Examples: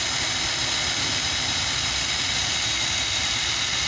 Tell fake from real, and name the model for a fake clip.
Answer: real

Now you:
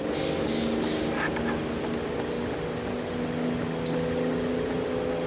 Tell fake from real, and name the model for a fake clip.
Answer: real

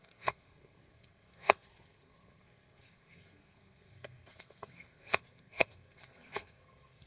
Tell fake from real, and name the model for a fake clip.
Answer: fake, codec, SNAC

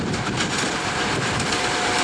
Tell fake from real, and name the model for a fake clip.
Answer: real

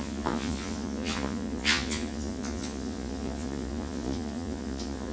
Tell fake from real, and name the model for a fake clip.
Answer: fake, vocoder, Vocos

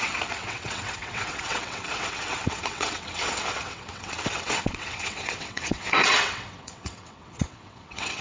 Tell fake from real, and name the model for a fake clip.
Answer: fake, vocoder, WaveNeXt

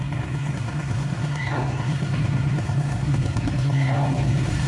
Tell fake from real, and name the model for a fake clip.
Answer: fake, codec, SNAC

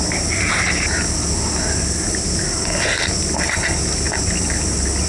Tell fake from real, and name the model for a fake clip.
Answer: real